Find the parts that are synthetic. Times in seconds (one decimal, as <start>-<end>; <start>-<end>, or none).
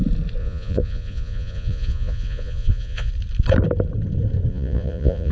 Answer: 0.4-3.1; 4.5-5.3